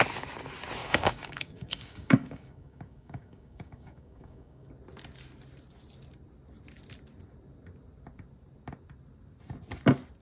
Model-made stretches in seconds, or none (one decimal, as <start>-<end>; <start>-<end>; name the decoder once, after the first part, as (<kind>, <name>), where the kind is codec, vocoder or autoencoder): 0.8-4.7 (codec, DAC)